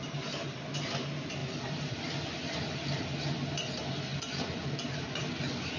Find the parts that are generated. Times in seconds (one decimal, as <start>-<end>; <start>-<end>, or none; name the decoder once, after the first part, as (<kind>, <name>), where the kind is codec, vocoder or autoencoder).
1.4-3.2 (vocoder, BigVGAN v2)